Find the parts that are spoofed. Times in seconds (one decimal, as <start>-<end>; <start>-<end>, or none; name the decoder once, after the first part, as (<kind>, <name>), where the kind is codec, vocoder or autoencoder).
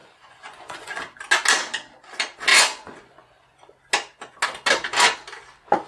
0.0-1.0 (vocoder, Vocos); 2.5-3.5